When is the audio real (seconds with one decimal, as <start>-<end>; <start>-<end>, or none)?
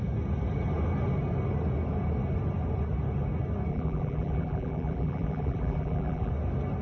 0.0-3.7; 6.3-6.8